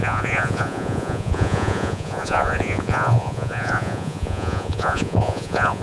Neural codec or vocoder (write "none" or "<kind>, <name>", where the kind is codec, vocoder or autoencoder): vocoder, Vocos